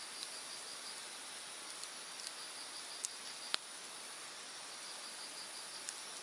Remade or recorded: recorded